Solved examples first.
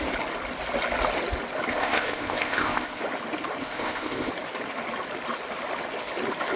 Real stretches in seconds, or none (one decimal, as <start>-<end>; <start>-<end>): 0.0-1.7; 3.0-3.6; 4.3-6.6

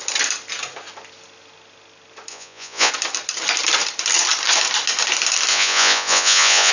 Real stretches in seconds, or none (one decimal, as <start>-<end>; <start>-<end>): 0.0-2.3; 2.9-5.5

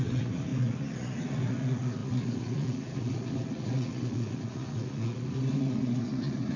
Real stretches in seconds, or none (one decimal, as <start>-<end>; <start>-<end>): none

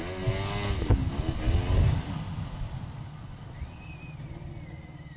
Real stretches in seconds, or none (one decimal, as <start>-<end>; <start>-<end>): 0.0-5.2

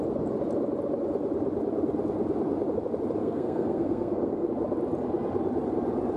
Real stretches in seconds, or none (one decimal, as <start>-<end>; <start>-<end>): 0.0-3.2; 4.5-6.2

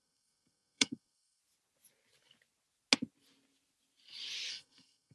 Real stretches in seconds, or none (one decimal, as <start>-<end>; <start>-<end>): 1.4-4.5

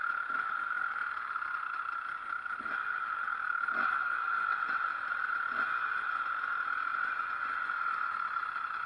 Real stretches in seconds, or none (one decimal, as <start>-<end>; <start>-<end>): 0.0-6.9; 8.4-8.9

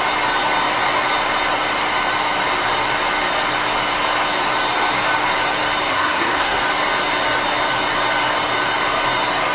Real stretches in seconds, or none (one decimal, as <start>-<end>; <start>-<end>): 0.0-5.9; 6.6-9.5